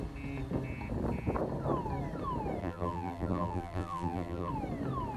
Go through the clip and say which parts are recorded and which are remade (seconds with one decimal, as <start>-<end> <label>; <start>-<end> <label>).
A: 0.0-2.6 recorded; 2.6-4.5 remade; 4.5-5.2 recorded

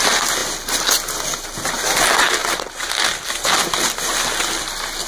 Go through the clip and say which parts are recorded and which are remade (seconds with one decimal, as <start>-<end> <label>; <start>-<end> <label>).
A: 0.0-5.1 recorded

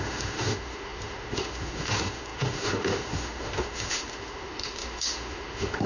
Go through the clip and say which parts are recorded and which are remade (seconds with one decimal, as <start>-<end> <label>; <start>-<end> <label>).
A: 0.0-5.9 remade

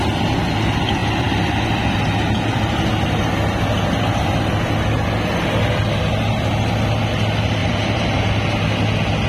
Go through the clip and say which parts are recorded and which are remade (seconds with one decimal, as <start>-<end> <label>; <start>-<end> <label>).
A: 0.0-7.6 recorded; 7.6-8.2 remade; 8.2-9.3 recorded

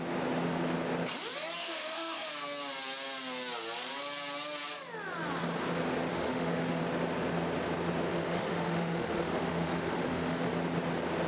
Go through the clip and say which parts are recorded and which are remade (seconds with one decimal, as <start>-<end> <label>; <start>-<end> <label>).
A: 0.0-1.6 recorded; 1.6-2.3 remade; 2.3-6.1 recorded; 6.1-6.8 remade; 6.8-8.1 recorded; 8.1-10.5 remade; 10.5-11.3 recorded